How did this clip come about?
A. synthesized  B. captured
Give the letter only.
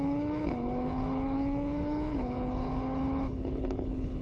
A